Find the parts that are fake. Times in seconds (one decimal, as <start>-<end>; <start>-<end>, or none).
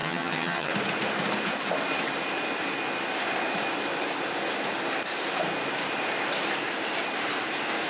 0.0-0.7